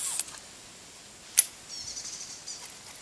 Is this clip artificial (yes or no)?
no